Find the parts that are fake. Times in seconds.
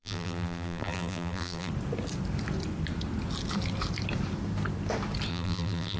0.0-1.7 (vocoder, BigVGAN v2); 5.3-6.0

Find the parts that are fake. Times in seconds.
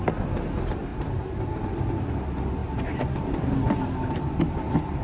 0.9-1.5 (vocoder, BigVGAN v2)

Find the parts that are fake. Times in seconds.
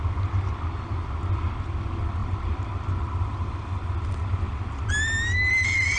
2.2-4.9 (vocoder, BigVGAN v2)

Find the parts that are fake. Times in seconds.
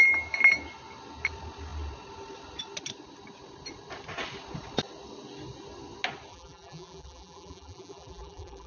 6.3-8.7 (vocoder, BigVGAN v2)